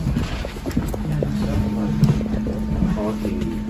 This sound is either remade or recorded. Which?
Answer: recorded